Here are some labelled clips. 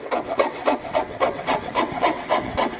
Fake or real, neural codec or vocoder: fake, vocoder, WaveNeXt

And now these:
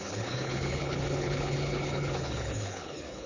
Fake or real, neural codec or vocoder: fake, codec, HILCodec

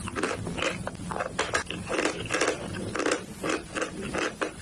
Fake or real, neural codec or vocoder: real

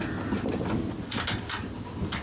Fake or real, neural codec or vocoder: real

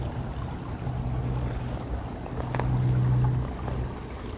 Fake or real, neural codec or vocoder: real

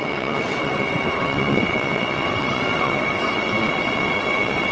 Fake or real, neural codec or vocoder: fake, vocoder, WaveNeXt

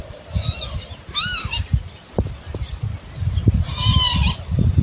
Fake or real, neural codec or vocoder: real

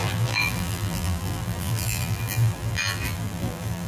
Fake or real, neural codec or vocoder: fake, vocoder, BigVGAN v2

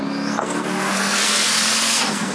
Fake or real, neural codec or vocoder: fake, codec, SNAC